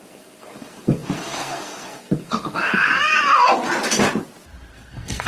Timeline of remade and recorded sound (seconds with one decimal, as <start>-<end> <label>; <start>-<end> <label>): 0.0-2.9 remade; 2.9-4.7 recorded; 4.7-5.3 remade

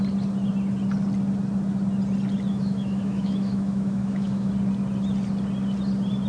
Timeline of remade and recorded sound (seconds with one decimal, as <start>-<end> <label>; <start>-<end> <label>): 0.0-2.5 recorded; 2.5-4.5 remade; 4.5-6.3 recorded

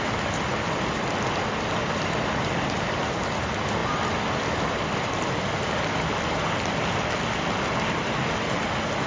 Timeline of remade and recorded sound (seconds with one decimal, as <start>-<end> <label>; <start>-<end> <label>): 0.0-9.1 recorded

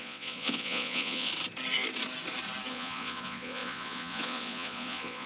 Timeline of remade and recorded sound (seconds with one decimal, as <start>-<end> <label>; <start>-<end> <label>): 0.0-1.3 remade; 1.3-2.7 recorded; 2.7-5.3 remade